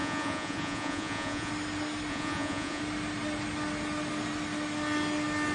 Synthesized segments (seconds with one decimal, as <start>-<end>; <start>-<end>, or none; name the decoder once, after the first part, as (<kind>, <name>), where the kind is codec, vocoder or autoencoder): 0.0-1.5 (vocoder, Vocos); 2.1-2.8